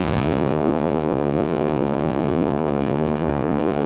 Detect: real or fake fake